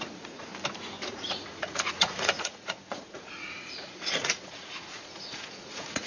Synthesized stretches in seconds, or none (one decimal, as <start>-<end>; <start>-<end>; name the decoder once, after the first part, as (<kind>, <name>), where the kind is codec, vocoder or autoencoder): 0.0-0.5 (vocoder, Vocos); 1.1-6.1